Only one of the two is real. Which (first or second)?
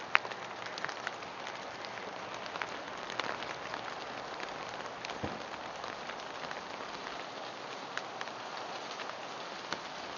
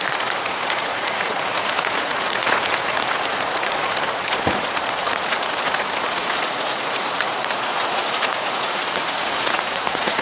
first